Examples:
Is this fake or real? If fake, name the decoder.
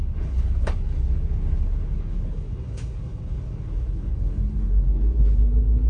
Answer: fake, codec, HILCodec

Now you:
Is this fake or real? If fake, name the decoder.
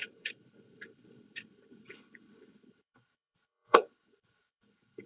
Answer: fake, codec, HILCodec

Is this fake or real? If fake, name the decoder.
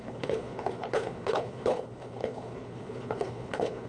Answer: fake, codec, HILCodec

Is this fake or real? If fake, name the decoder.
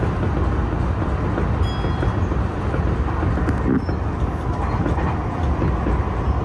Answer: real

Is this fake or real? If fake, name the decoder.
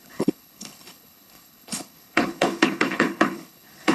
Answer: fake, codec, HILCodec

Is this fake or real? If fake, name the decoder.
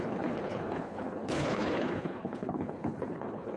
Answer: fake, codec, HILCodec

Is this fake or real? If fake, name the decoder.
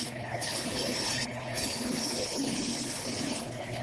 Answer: fake, codec, HILCodec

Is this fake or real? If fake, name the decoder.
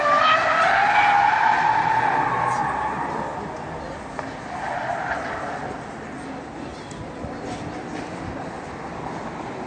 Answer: real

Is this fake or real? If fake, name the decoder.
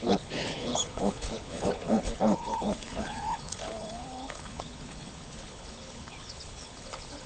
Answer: fake, codec, HILCodec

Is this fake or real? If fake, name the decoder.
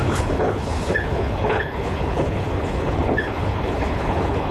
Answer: fake, codec, HILCodec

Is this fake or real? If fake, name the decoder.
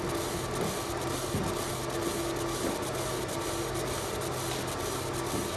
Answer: real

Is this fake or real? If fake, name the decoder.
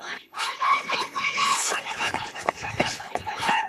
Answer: fake, codec, HILCodec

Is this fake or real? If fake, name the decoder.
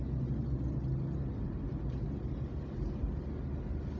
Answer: real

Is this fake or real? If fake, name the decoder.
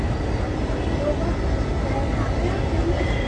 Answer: real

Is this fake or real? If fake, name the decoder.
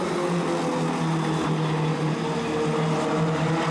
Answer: real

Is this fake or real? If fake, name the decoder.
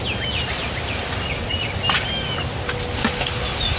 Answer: real